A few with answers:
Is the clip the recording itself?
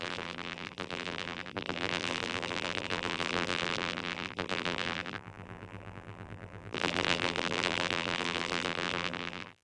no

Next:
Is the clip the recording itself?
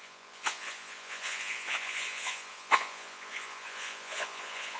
no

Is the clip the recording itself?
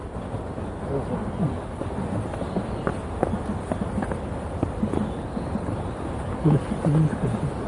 yes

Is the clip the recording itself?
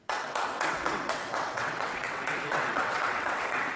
no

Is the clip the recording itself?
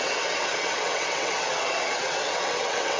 no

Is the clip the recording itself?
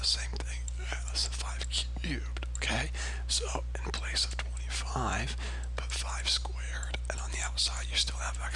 yes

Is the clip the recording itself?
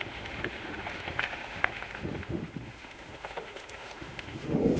no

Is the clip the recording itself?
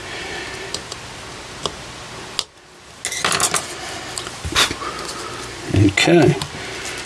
yes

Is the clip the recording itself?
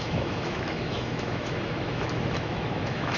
no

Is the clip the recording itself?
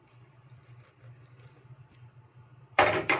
no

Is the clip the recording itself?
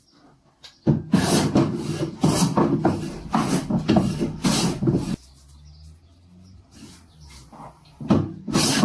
yes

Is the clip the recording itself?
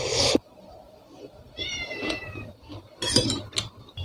no